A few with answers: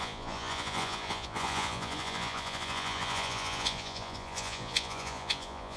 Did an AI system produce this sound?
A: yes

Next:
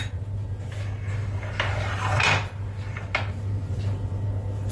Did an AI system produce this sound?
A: no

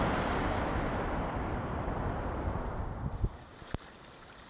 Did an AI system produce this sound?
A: no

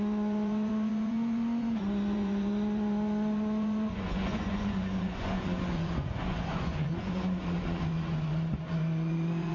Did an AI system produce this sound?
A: yes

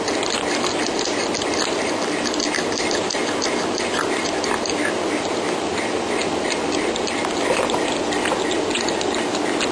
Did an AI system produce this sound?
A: no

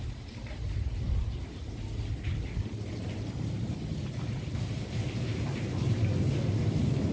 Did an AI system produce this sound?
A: no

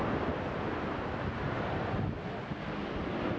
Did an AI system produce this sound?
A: no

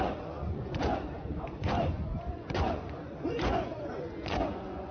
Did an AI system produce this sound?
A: yes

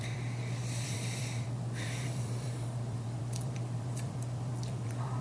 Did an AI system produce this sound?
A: yes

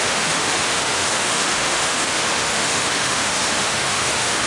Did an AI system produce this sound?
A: yes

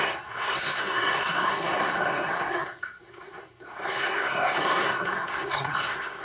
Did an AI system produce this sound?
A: yes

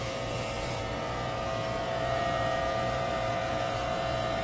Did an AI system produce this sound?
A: yes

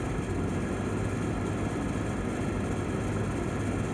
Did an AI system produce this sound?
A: no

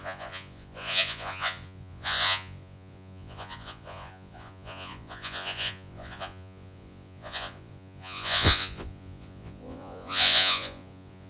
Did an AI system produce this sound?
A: yes